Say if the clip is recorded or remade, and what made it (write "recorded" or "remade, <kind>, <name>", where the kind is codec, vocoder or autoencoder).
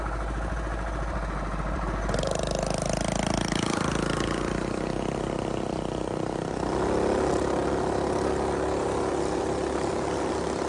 recorded